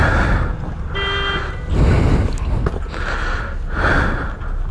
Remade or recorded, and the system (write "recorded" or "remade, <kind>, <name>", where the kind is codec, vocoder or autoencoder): recorded